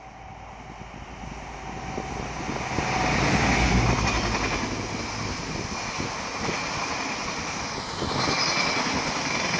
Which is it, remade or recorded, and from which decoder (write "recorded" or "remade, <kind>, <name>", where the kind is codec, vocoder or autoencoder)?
recorded